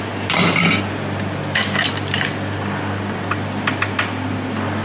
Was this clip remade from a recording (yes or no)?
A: no